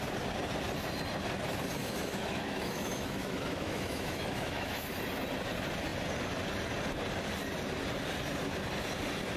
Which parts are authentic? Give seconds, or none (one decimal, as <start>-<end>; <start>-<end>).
0.0-1.8; 4.9-9.4